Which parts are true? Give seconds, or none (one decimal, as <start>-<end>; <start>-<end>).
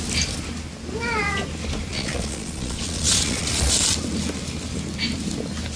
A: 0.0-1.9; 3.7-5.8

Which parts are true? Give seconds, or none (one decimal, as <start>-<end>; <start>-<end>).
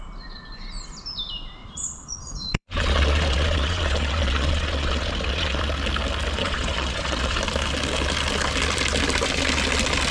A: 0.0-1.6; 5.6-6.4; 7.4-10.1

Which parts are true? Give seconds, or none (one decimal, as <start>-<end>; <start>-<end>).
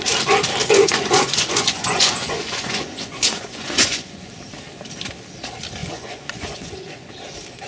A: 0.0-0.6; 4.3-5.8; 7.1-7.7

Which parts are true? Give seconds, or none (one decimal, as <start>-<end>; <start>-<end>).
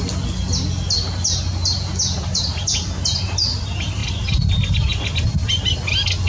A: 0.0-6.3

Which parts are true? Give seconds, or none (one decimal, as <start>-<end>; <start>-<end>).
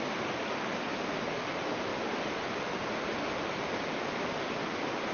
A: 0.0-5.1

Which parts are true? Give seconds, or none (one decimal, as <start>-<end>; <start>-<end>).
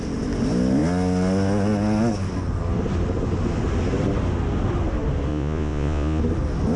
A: 0.0-5.3; 6.2-6.8